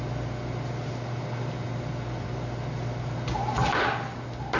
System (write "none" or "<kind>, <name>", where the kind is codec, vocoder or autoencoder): none